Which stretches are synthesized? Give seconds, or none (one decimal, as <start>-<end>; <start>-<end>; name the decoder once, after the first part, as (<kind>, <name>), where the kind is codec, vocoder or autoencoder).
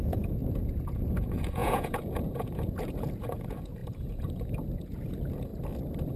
0.0-5.5 (vocoder, Vocos)